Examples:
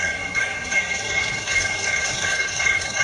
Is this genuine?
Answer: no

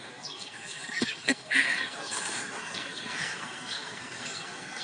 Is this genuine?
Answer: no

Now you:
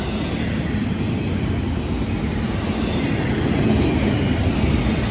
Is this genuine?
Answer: yes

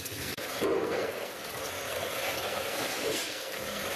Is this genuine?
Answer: no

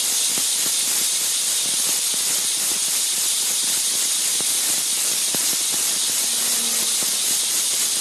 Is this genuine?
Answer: yes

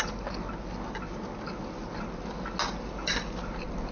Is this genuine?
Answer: yes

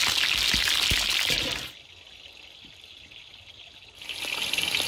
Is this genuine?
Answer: yes